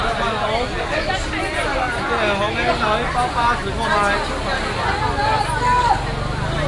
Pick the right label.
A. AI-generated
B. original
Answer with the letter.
B